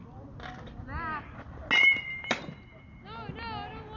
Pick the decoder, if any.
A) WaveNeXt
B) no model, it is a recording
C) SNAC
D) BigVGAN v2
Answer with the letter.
B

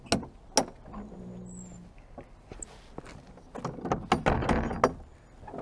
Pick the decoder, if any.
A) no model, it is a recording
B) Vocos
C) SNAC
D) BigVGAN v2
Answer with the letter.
A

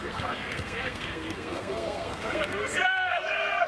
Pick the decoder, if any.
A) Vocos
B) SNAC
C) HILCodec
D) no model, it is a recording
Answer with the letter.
B